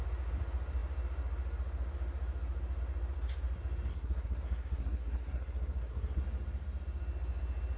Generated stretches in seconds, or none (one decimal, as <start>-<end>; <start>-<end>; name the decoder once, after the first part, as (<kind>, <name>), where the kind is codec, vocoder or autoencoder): 3.9-6.2 (codec, SNAC)